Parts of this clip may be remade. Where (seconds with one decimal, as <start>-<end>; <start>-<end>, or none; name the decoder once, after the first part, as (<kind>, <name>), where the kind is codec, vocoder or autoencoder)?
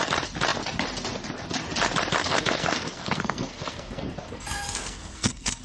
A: 2.2-5.6 (codec, SNAC)